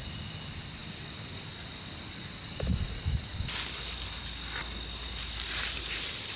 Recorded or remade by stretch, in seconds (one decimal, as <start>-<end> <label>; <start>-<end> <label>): 0.0-6.4 recorded